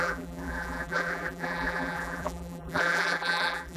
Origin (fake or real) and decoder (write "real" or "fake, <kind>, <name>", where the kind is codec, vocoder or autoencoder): fake, vocoder, BigVGAN v2